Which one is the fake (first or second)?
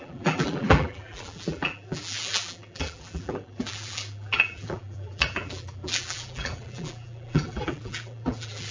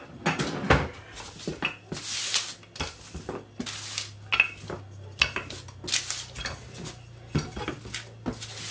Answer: first